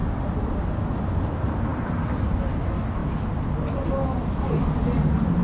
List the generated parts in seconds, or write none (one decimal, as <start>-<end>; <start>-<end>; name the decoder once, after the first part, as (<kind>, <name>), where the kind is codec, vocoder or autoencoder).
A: 1.7-2.5 (vocoder, BigVGAN v2)